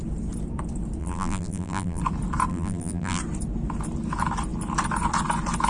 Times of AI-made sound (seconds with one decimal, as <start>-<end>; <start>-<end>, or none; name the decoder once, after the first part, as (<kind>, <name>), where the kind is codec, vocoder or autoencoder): 1.0-2.0 (vocoder, BigVGAN v2); 2.5-3.2